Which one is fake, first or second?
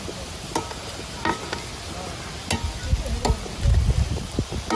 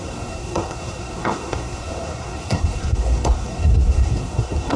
second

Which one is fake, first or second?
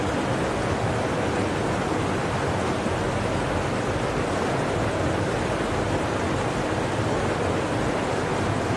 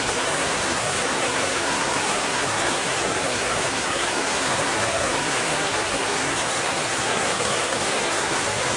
second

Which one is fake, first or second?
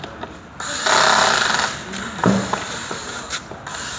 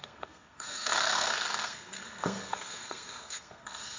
second